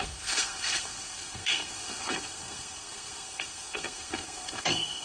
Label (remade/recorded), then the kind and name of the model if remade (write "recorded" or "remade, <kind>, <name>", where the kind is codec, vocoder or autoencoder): remade, codec, SNAC